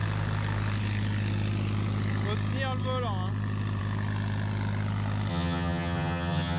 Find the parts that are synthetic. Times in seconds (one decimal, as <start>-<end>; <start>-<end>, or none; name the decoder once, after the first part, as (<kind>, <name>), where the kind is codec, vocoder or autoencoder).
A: 5.3-6.6 (vocoder, HiFi-GAN)